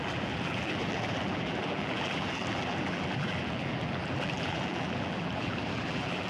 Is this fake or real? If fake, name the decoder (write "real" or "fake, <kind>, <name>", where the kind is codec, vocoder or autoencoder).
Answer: fake, vocoder, BigVGAN v2